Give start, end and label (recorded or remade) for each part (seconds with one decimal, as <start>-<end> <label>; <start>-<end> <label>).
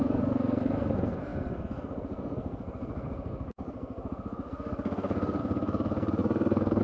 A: 0.0-6.8 remade